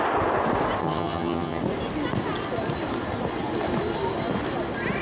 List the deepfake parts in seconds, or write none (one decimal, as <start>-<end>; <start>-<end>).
0.8-1.6